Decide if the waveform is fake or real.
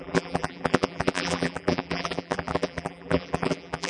fake